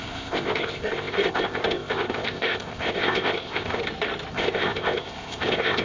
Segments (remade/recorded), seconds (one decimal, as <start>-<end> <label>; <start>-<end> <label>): 0.0-3.8 remade; 3.8-4.3 recorded; 4.3-5.8 remade

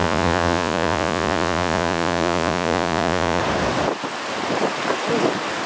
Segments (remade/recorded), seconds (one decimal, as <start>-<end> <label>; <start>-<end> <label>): 0.0-3.4 remade; 3.4-5.7 recorded

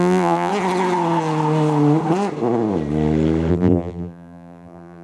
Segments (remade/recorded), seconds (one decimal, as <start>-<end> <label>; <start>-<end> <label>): 0.0-0.5 remade; 0.5-3.5 recorded; 3.5-5.0 remade